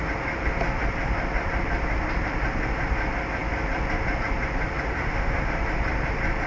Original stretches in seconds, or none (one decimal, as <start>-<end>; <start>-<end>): 0.0-4.9; 5.5-6.5